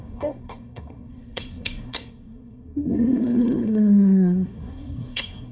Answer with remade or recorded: remade